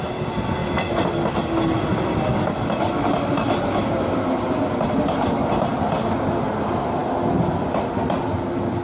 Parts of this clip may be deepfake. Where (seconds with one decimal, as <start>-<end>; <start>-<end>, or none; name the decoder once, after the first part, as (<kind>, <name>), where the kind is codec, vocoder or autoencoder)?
none

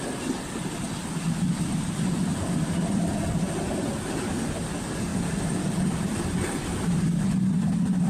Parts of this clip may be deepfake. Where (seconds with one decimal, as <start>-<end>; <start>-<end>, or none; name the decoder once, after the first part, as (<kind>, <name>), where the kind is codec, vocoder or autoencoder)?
none

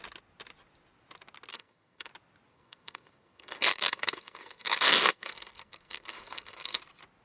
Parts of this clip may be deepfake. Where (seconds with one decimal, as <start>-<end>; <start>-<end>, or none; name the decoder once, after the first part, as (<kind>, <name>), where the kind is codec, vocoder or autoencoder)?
1.5-2.1 (codec, SNAC); 2.5-6.8

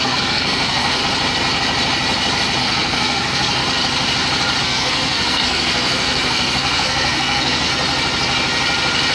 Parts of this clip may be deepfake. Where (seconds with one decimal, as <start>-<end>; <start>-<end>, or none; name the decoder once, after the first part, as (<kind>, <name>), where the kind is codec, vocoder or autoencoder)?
0.0-1.0 (codec, SNAC); 2.6-3.6; 4.6-7.7

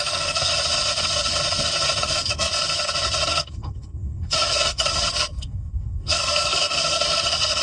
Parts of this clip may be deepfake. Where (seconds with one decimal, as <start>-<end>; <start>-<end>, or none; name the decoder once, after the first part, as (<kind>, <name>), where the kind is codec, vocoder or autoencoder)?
0.0-0.5 (codec, SNAC); 2.0-2.5; 3.3-7.6

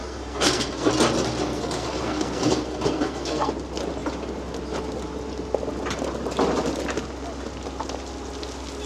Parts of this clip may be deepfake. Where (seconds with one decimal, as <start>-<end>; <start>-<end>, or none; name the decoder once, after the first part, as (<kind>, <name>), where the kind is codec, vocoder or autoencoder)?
0.0-0.9 (codec, SNAC); 1.5-3.5

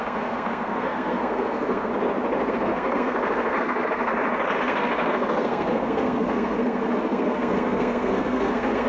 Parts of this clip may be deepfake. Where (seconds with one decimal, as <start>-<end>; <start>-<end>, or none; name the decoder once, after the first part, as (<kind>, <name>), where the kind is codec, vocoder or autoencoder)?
0.0-1.9 (codec, SNAC); 2.5-4.1; 4.6-8.9

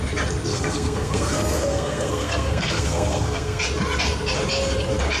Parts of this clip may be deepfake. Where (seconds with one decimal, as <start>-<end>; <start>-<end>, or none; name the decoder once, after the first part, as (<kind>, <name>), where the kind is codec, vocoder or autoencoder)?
0.5-3.6 (codec, SNAC)